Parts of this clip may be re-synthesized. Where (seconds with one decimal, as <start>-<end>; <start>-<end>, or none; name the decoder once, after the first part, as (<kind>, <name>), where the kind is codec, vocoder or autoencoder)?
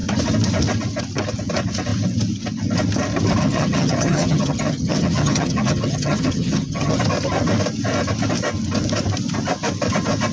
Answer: 3.4-7.0 (vocoder, HiFi-GAN)